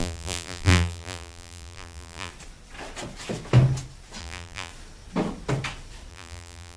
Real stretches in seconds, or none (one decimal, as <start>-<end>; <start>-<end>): 2.3-4.2; 4.7-6.1